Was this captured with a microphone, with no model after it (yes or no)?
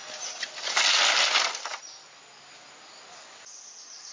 yes